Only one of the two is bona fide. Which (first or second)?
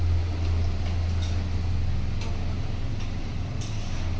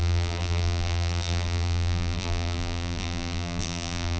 first